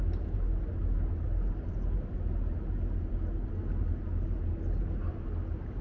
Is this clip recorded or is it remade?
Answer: recorded